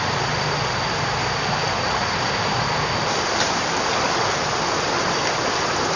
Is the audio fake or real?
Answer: real